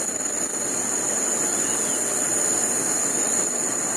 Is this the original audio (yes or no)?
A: yes